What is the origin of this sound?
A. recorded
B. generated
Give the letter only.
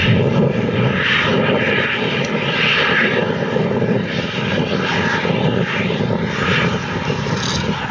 A